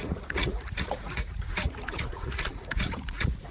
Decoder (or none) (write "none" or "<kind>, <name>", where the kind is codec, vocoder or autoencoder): vocoder, Vocos